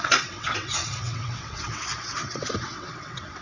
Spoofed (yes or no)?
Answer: yes